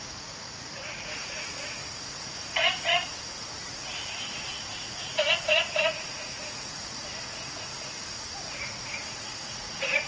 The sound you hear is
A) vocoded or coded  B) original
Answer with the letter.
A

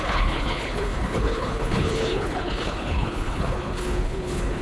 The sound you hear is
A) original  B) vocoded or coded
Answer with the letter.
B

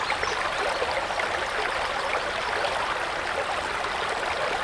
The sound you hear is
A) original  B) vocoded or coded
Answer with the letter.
A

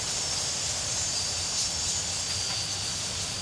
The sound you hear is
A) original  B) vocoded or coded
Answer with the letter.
A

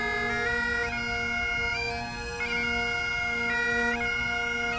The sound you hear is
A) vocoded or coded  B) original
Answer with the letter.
B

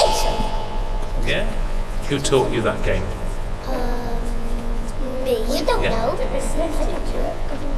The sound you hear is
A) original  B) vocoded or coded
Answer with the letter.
B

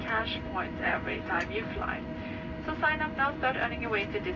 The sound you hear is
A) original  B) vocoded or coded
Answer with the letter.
A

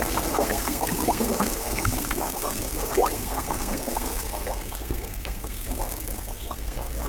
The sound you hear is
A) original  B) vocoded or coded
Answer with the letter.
B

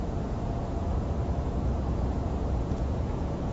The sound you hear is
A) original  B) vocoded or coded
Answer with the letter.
B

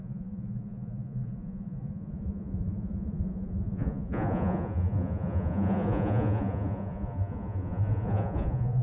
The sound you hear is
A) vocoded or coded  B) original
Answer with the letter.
A